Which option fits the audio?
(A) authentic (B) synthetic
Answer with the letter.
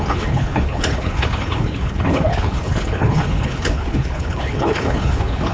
B